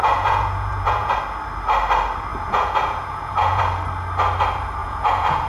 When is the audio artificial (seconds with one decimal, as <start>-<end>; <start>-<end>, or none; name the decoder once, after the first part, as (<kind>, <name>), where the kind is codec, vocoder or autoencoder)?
0.0-1.2 (vocoder, Vocos); 2.3-3.6; 4.8-5.5